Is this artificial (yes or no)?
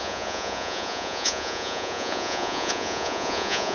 yes